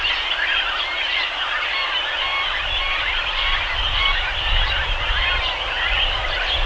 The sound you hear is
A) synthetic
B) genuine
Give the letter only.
B